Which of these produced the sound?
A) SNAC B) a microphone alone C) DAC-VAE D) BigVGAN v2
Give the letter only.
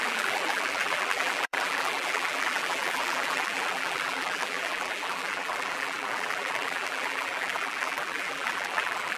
D